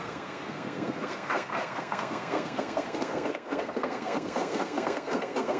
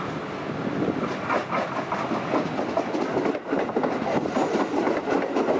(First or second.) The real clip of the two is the second